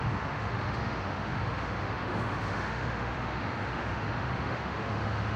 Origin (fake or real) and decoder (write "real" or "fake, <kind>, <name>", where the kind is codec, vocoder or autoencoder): fake, autoencoder, DAC-VAE